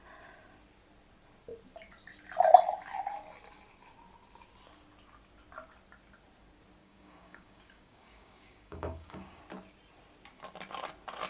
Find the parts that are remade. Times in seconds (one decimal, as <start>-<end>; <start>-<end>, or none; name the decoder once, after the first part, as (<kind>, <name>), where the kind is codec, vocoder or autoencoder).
6.8-9.4 (codec, DAC)